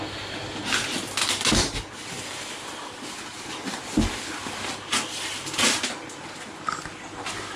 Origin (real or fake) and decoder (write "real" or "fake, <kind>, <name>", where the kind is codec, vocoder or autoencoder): real